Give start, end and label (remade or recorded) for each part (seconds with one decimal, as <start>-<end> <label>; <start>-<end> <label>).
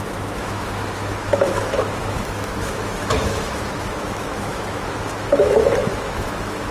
0.0-6.7 remade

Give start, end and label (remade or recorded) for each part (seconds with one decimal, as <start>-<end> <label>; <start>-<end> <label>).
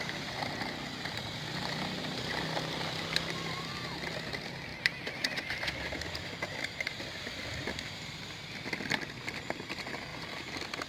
0.0-10.9 recorded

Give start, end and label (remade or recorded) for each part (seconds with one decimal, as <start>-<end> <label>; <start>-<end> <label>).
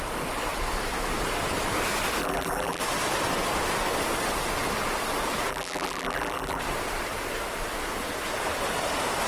0.0-2.2 recorded; 2.2-2.8 remade; 2.8-5.5 recorded; 5.5-6.6 remade; 6.6-9.3 recorded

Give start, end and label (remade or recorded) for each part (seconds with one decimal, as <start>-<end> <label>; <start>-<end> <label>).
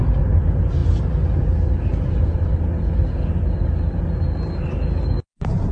0.0-5.7 recorded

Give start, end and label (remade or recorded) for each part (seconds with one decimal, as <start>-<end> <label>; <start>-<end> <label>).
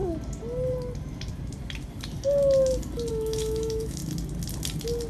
0.0-3.1 recorded; 3.1-4.0 remade; 4.0-5.1 recorded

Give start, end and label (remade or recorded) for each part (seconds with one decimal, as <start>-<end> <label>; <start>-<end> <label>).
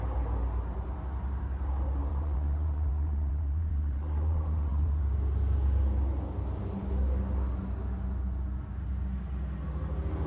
0.0-2.1 recorded; 2.1-5.0 remade; 5.0-10.3 recorded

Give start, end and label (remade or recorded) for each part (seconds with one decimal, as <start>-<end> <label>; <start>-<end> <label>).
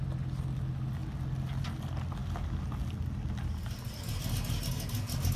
0.0-5.4 recorded